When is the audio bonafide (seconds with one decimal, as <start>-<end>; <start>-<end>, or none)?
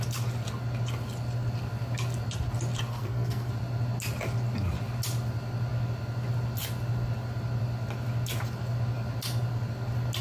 0.0-2.9; 3.5-10.2